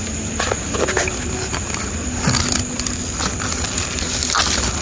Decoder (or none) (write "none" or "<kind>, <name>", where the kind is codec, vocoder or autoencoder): none